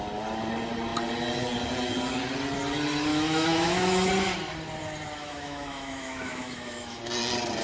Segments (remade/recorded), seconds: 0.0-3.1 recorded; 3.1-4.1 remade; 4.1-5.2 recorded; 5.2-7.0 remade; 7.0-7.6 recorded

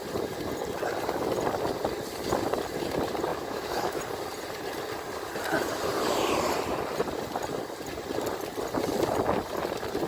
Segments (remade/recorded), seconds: 0.0-3.3 recorded; 3.3-4.0 remade; 4.0-10.1 recorded

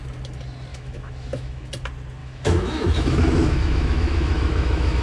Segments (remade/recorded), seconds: 0.0-0.7 recorded; 0.7-1.7 remade; 1.7-2.2 recorded; 2.2-5.0 remade